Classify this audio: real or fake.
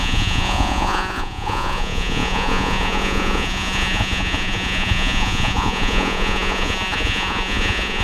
fake